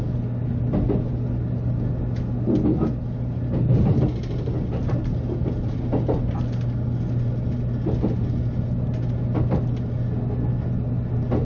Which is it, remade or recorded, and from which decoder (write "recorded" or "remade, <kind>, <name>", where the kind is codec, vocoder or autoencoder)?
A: recorded